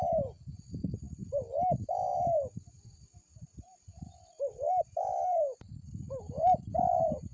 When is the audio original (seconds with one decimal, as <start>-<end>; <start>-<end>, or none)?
0.0-7.3